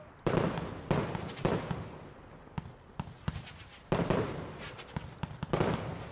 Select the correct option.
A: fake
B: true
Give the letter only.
B